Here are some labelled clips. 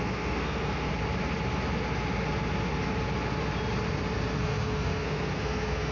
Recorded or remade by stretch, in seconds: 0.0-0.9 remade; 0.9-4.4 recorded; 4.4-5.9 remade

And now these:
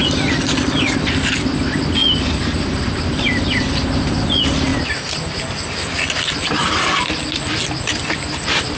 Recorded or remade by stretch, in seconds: 0.0-8.8 recorded

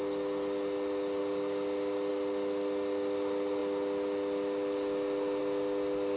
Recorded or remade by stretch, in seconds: 0.0-6.2 recorded

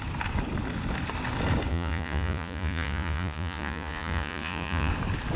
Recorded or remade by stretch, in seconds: 0.0-1.7 recorded; 1.7-4.9 remade; 4.9-5.4 recorded

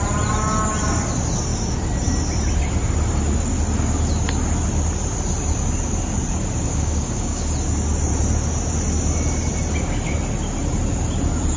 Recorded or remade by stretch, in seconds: 0.0-6.7 recorded; 6.7-7.5 remade; 7.5-11.6 recorded

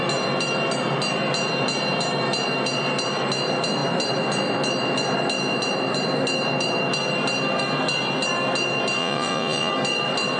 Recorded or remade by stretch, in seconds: 0.0-9.0 recorded; 9.0-9.7 remade; 9.7-10.4 recorded

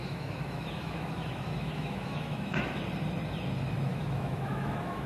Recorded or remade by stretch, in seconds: 0.0-2.8 remade; 2.8-3.9 recorded; 3.9-5.1 remade

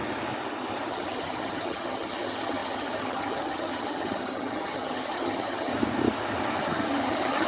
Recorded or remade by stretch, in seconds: 0.0-0.9 recorded; 0.9-5.7 remade; 5.7-6.6 recorded; 6.6-7.5 remade